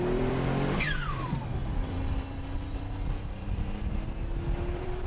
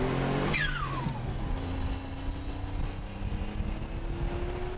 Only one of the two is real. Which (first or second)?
second